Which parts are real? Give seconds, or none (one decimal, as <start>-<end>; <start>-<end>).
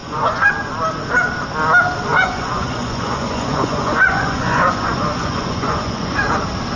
0.5-2.1; 6.2-6.8